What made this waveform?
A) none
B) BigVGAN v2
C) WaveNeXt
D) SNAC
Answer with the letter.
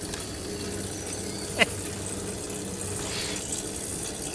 A